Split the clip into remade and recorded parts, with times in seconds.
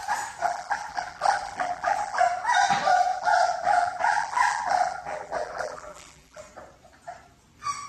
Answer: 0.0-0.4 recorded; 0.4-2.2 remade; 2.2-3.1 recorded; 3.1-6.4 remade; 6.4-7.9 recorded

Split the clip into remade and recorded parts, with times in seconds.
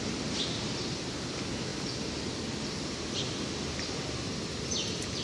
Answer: 0.0-5.2 recorded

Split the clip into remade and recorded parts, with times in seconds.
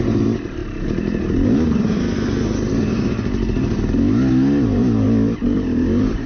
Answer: 0.0-6.3 recorded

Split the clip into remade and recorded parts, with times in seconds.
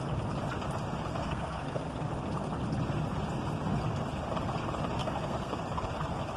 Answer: 0.0-1.1 recorded; 1.1-2.1 remade; 2.1-5.0 recorded; 5.0-5.6 remade; 5.6-6.4 recorded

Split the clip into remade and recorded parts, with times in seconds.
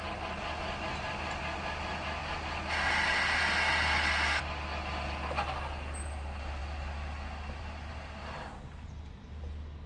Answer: 0.0-9.9 recorded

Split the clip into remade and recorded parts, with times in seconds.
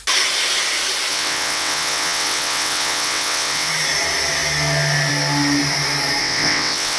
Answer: 0.0-1.1 recorded; 1.1-3.7 remade; 3.7-6.2 recorded; 6.2-7.0 remade